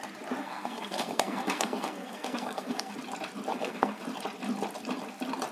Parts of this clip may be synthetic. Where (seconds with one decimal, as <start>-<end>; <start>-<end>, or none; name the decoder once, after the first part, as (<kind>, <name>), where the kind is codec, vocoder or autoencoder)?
0.4-2.9 (codec, SNAC); 3.5-4.0